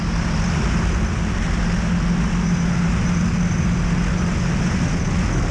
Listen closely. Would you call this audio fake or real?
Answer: real